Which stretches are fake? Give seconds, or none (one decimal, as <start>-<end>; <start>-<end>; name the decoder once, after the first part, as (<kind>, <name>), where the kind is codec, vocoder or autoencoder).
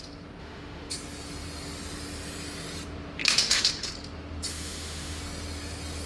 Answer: 0.4-0.9 (autoencoder, DAC-VAE); 3.2-3.9; 4.5-5.2